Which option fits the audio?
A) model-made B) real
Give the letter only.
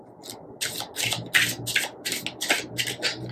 B